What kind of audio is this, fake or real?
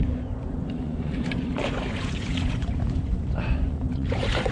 fake